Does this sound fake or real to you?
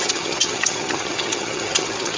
fake